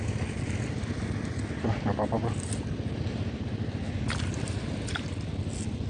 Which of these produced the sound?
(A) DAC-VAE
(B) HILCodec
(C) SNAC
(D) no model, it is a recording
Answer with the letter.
D